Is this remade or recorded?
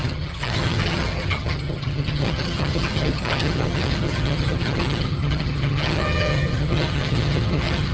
remade